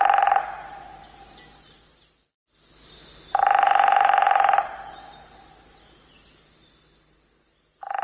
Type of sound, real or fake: real